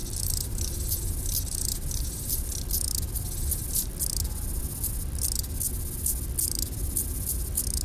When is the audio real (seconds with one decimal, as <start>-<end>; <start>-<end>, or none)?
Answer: 0.0-7.8